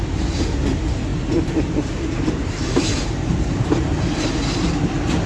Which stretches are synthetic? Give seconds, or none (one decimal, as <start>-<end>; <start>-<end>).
1.1-4.3